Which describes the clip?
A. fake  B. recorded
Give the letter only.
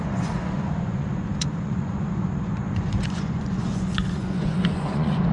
A